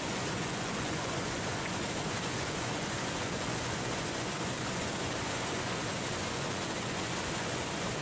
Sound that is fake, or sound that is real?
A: fake